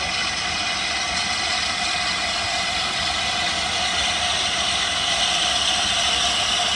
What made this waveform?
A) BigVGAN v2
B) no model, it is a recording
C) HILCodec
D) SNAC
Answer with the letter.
B